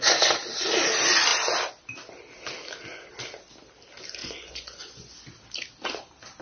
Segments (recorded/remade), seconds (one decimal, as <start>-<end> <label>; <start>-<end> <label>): 0.0-4.2 recorded; 4.2-5.1 remade; 5.1-6.4 recorded